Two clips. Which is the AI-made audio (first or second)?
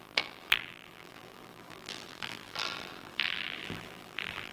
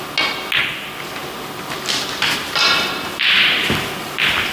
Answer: first